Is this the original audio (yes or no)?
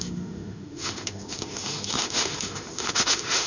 no